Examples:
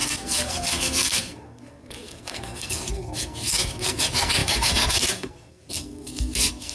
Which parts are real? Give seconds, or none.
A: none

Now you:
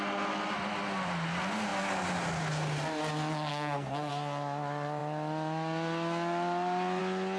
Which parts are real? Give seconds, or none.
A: 0.0-3.5; 4.1-7.4

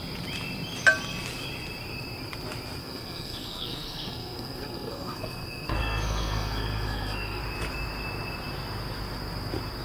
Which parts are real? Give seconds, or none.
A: 0.0-2.8; 7.4-9.8

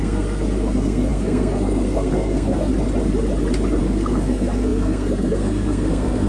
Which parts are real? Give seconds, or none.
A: 2.7-3.8

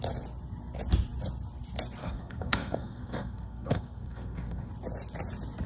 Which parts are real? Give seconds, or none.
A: 0.0-2.0; 4.7-5.7

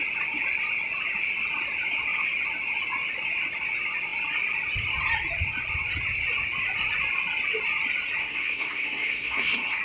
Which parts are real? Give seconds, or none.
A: 0.0-8.2